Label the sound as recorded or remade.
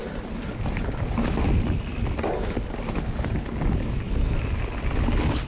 recorded